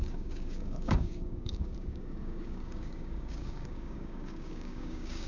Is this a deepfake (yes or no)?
yes